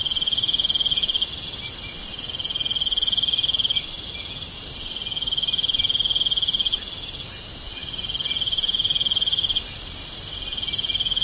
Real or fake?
real